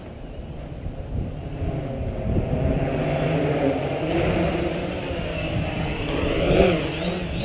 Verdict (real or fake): real